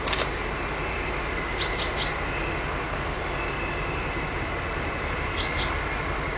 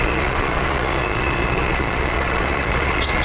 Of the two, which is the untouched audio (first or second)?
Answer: first